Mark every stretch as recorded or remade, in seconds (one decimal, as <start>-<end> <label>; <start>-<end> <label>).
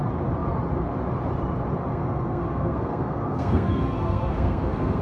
0.0-1.9 recorded; 1.9-5.0 remade